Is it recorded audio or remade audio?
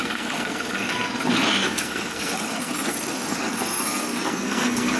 remade